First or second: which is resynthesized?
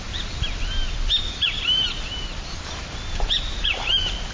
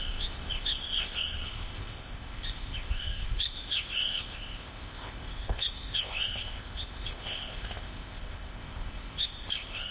second